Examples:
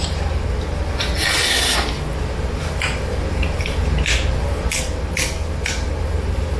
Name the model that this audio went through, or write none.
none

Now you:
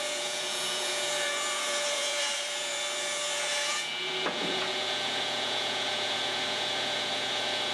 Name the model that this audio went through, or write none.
vocoder, Vocos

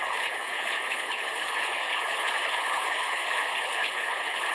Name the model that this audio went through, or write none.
codec, HILCodec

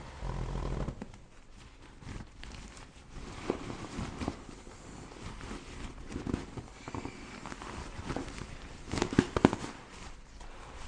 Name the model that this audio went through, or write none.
none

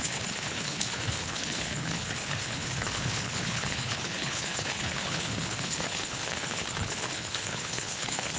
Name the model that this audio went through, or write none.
codec, HILCodec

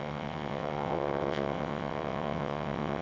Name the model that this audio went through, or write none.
vocoder, WaveNeXt